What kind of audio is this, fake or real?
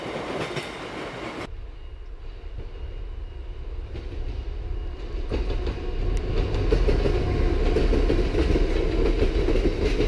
real